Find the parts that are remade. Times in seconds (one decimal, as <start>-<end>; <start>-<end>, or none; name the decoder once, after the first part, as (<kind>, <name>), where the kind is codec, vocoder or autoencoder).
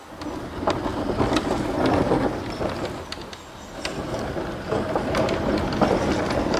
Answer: none